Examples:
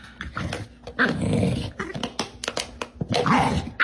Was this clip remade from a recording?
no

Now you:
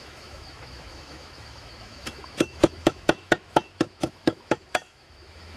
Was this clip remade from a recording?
yes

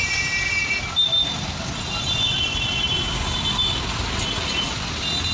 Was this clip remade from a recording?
no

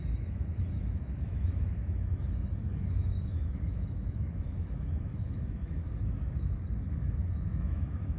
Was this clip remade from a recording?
yes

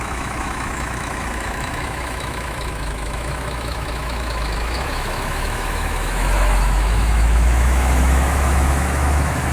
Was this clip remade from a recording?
yes